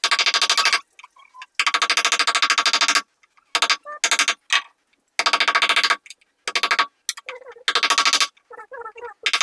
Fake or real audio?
real